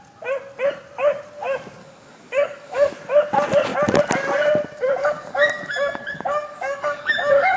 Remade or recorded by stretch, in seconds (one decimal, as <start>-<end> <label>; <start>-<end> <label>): 0.0-1.8 recorded; 1.8-2.9 remade; 2.9-5.0 recorded; 5.0-7.6 remade